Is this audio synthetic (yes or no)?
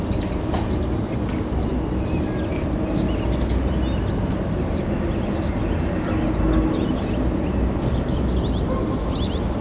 no